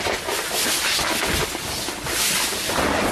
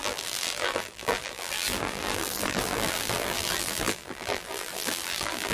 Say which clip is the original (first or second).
first